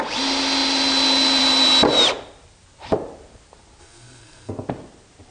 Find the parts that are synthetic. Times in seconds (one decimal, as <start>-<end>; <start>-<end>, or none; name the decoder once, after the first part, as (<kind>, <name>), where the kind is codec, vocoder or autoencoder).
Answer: 3.8-4.5 (codec, SNAC)